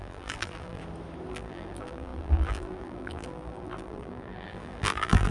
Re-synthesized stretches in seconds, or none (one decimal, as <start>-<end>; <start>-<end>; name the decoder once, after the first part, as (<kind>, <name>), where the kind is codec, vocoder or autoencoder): 0.0-0.8 (vocoder, BigVGAN v2); 1.3-5.3